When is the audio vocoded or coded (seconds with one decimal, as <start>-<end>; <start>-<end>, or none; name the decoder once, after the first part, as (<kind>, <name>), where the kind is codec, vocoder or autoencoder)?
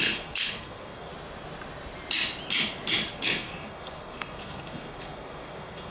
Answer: 0.0-1.1 (codec, SNAC); 3.1-5.9